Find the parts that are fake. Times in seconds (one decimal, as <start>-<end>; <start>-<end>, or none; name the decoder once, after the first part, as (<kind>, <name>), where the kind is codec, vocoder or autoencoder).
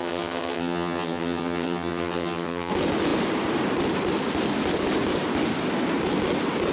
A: 0.0-2.7 (vocoder, HiFi-GAN)